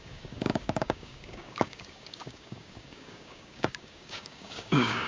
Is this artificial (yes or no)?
yes